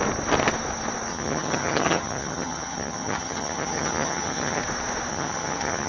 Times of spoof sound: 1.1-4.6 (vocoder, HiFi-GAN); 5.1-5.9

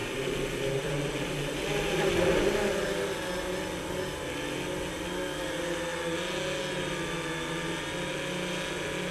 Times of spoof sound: 0.0-0.9 (vocoder, BigVGAN v2)

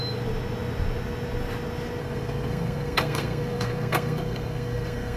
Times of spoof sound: 2.0-5.2 (codec, SNAC)

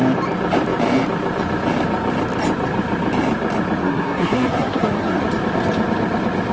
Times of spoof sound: 3.8-5.2 (codec, SNAC)

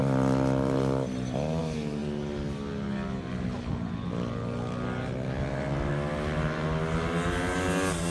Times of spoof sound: none